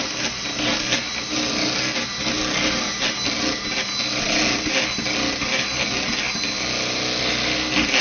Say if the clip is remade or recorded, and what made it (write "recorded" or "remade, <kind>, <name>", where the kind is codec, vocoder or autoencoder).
recorded